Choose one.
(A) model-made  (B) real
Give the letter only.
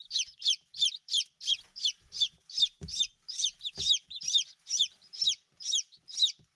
B